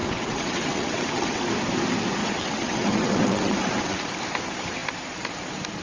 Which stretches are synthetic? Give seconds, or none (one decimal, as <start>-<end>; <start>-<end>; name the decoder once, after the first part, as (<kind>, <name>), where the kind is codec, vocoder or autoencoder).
0.0-1.4 (vocoder, WaveNeXt); 2.2-4.0